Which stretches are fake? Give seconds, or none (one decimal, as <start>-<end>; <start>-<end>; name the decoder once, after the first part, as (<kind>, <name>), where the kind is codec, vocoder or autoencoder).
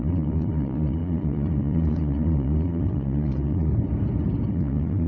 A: 0.0-3.7 (vocoder, Vocos); 4.5-5.1